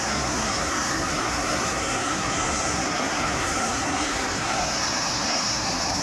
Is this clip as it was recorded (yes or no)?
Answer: no